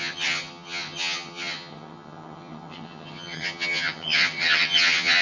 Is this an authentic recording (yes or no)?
no